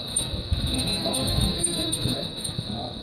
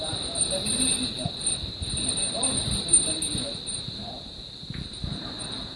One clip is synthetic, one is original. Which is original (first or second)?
second